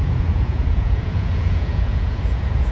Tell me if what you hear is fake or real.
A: fake